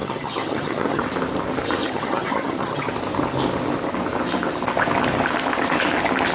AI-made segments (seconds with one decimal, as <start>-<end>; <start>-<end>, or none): 0.0-1.0; 1.8-2.9